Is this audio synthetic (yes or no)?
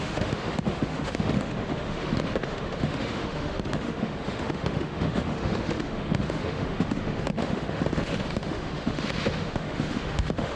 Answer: yes